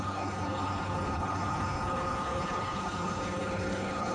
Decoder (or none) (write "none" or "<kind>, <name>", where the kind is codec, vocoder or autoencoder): codec, HILCodec